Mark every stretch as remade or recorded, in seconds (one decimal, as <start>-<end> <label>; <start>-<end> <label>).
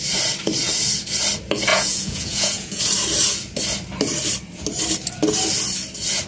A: 0.0-1.7 recorded; 1.7-2.8 remade; 2.8-6.3 recorded